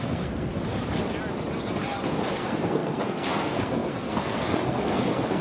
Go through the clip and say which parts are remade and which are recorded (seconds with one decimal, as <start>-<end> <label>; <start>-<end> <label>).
0.0-0.5 remade; 0.5-2.3 recorded; 2.3-5.4 remade